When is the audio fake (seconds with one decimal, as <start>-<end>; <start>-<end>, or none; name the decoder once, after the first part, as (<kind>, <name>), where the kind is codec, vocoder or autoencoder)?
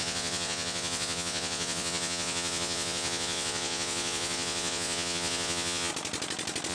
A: 0.0-5.9 (vocoder, Vocos)